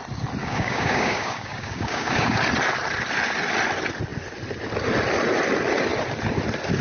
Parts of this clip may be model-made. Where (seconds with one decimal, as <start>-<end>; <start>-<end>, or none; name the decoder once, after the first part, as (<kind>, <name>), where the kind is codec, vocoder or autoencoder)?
0.4-2.4 (codec, DAC)

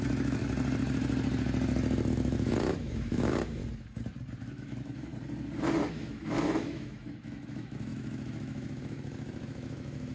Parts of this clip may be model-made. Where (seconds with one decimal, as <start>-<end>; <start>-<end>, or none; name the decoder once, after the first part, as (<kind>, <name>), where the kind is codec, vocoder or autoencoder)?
0.0-0.4 (autoencoder, DAC-VAE); 2.1-3.6; 4.4-5.1; 5.9-10.1

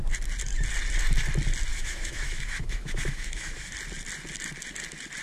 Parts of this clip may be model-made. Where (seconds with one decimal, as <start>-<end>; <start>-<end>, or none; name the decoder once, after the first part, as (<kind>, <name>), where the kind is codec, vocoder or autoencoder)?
1.7-3.7 (autoencoder, DAC-VAE)

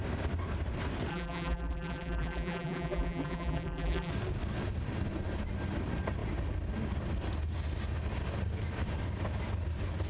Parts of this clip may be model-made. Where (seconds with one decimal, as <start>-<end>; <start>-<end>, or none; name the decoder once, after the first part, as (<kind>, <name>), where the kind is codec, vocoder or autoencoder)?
1.1-4.1 (vocoder, BigVGAN v2)

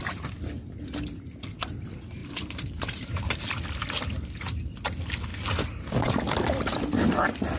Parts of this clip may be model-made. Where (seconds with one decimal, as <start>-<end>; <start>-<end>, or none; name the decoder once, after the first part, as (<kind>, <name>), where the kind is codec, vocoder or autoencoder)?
2.2-3.4 (vocoder, BigVGAN v2)